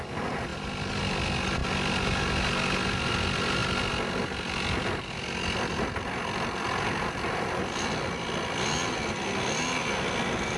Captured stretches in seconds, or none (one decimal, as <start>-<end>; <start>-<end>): 0.0-10.6